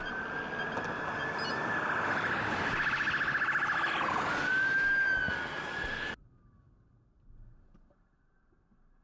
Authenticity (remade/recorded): recorded